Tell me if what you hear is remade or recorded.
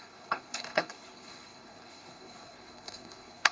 remade